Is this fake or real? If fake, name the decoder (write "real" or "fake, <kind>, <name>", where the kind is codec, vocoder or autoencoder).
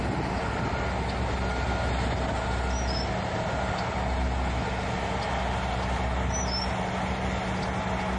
real